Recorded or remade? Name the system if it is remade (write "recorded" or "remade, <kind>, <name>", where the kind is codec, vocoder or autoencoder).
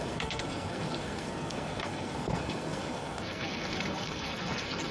remade, codec, SNAC